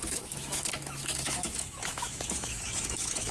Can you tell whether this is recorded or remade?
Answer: remade